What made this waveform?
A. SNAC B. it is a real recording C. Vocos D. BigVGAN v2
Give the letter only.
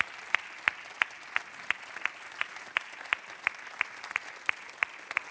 B